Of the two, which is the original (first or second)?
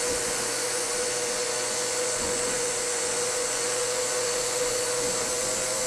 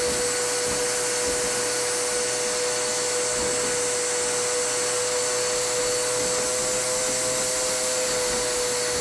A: second